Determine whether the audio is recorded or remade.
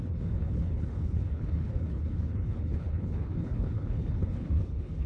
remade